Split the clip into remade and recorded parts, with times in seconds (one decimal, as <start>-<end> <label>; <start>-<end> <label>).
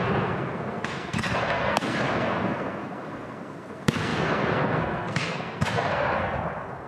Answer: 0.0-6.9 remade